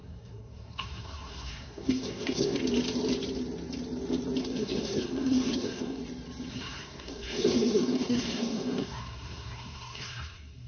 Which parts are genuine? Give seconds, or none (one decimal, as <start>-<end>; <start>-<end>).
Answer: 2.6-4.4; 6.0-6.5